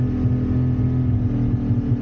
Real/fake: real